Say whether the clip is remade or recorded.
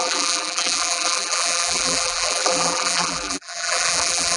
remade